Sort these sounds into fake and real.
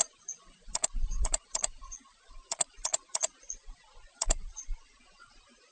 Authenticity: fake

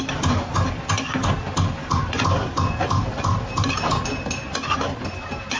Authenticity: real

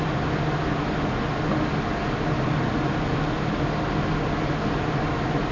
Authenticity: real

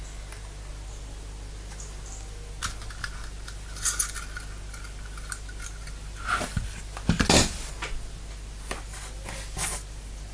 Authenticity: real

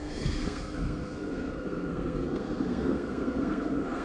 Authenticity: fake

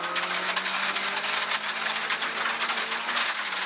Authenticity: real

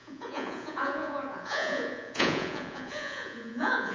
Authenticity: fake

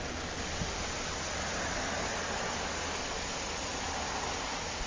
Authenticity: real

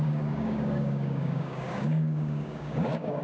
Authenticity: fake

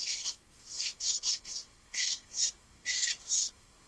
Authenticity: fake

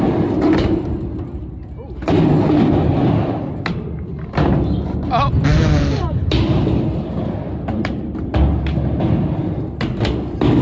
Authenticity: real